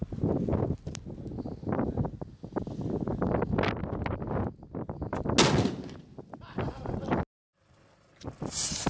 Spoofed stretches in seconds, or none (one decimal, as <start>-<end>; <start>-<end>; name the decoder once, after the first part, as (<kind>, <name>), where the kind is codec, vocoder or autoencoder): none